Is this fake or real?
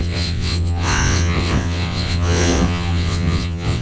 fake